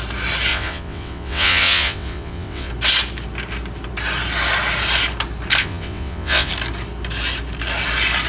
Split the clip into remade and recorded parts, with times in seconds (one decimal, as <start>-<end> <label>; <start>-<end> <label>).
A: 0.0-0.5 recorded; 0.5-2.7 remade; 2.7-5.6 recorded; 5.6-6.5 remade; 6.5-8.3 recorded